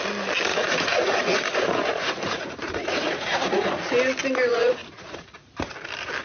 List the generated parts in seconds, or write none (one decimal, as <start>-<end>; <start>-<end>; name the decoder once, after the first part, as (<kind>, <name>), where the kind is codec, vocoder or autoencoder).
0.5-3.8 (vocoder, Vocos); 4.5-5.5